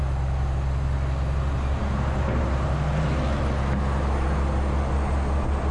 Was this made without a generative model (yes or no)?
yes